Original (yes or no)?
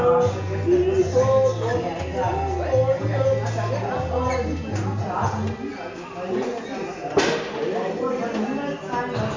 yes